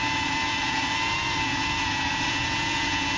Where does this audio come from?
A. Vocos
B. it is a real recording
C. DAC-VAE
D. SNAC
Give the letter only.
A